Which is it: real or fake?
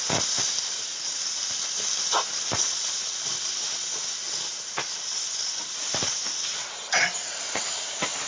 fake